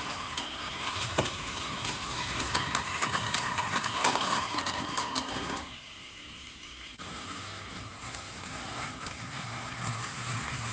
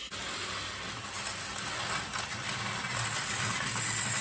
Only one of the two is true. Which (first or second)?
second